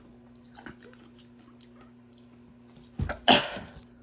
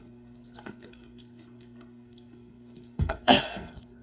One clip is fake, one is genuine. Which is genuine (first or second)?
first